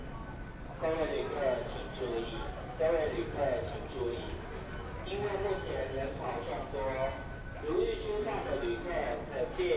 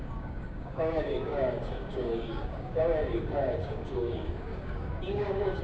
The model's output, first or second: second